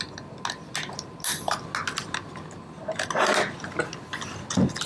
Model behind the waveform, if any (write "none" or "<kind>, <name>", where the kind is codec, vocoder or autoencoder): none